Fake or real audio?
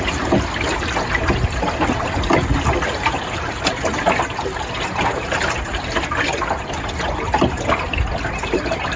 real